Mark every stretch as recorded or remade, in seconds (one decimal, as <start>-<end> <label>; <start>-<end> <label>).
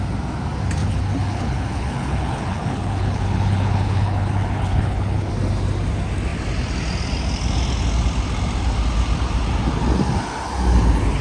0.0-0.8 recorded; 0.8-5.3 remade; 5.3-11.2 recorded